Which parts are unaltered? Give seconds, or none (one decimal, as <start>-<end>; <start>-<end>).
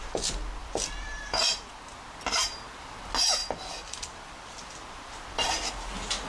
0.0-0.6; 1.5-3.4; 5.2-6.3